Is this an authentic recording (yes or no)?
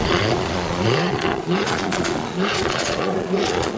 no